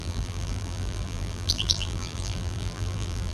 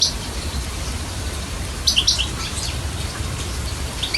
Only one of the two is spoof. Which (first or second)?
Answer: first